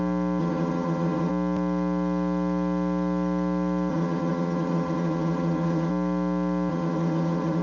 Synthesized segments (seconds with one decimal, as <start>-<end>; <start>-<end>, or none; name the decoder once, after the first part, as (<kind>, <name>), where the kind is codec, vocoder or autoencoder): 0.4-1.3 (vocoder, HiFi-GAN); 3.9-5.9; 6.7-7.6